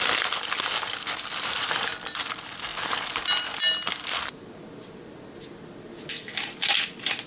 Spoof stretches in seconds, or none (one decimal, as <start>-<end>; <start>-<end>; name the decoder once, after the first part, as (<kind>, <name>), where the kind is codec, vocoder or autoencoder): none